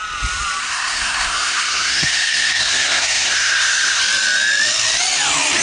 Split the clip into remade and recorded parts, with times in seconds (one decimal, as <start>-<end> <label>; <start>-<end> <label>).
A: 0.0-0.6 recorded; 0.6-4.0 remade; 4.0-5.6 recorded